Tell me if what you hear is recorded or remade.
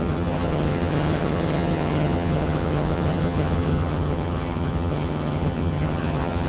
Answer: remade